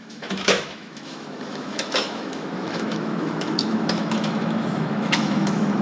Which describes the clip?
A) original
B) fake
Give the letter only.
B